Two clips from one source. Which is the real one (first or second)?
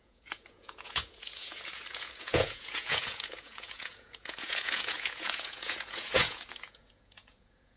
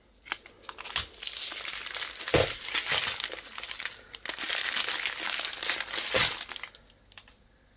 second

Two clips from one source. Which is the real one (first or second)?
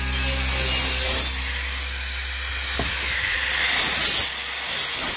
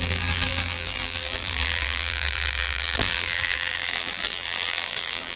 first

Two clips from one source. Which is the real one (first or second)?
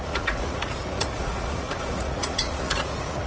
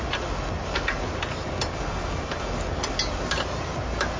second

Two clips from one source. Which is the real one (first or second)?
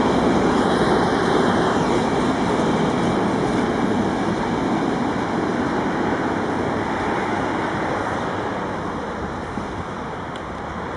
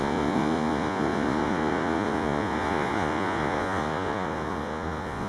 first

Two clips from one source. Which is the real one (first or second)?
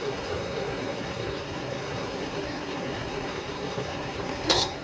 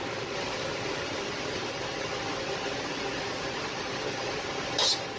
second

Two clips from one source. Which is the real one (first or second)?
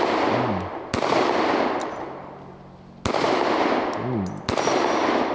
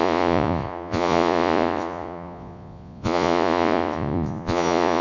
first